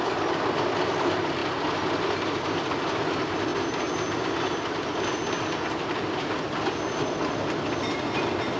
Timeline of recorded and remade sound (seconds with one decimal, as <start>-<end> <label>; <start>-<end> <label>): 0.0-8.6 recorded